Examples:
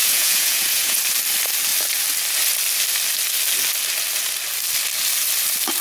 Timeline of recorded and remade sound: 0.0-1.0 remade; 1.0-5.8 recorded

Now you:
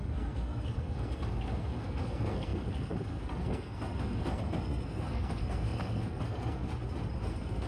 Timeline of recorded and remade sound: 0.0-6.7 remade; 6.7-7.3 recorded; 7.3-7.7 remade

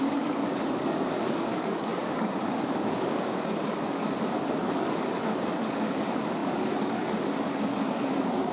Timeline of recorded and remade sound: 0.0-8.5 remade

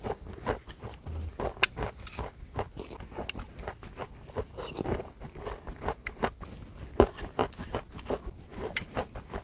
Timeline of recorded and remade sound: 0.0-9.4 recorded